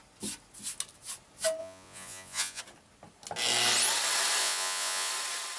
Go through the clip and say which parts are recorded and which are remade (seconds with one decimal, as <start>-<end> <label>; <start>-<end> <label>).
0.0-1.6 recorded; 1.6-2.6 remade; 2.6-4.4 recorded; 4.4-5.1 remade; 5.1-5.6 recorded